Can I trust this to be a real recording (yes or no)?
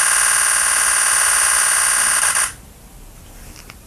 yes